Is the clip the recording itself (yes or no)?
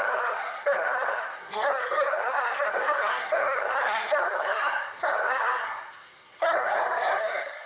no